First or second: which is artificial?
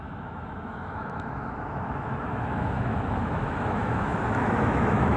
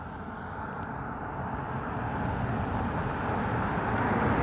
first